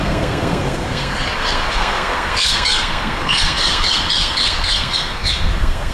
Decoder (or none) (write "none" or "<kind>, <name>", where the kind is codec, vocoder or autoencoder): codec, SNAC